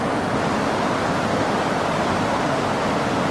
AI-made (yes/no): no